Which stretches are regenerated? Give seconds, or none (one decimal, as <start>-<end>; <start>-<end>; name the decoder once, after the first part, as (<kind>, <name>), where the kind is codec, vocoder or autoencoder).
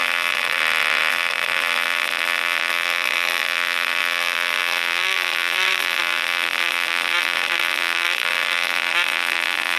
0.0-0.6 (vocoder, BigVGAN v2); 1.1-9.8